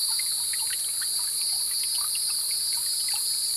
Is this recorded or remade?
recorded